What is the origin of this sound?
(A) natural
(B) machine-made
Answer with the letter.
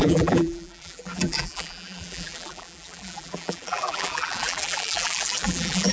B